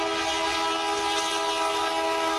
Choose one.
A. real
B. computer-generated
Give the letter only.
A